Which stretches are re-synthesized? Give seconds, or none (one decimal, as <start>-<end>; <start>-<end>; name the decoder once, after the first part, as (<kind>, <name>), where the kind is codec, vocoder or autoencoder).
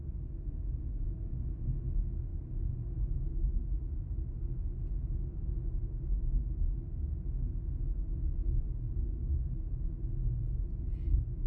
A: 3.5-4.3 (vocoder, BigVGAN v2)